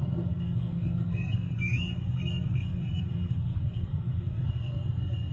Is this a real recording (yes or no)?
no